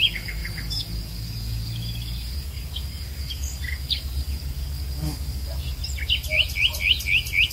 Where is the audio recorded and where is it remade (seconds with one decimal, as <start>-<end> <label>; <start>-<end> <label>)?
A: 0.0-5.8 remade; 5.8-7.5 recorded